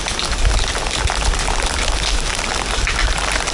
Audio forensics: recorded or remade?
recorded